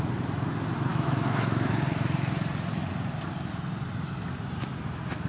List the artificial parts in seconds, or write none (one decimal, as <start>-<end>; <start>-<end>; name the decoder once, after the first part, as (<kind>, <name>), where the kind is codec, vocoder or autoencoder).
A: 0.9-1.7 (autoencoder, DAC-VAE)